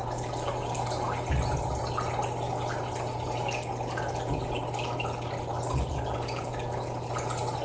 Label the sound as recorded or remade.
recorded